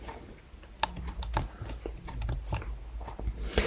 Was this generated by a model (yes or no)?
no